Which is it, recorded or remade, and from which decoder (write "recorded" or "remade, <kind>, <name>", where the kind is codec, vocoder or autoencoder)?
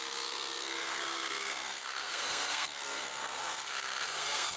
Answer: remade, codec, SNAC